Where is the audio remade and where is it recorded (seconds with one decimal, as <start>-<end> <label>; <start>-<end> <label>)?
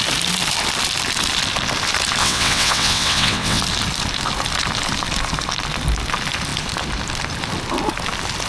0.0-2.2 recorded; 2.2-3.6 remade; 3.6-8.5 recorded